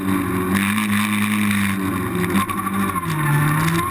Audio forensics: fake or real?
real